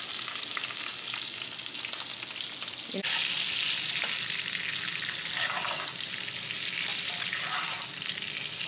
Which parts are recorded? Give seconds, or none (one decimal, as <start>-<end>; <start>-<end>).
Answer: 0.0-6.9; 7.8-8.7